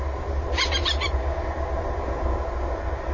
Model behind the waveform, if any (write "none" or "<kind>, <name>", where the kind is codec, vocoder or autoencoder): none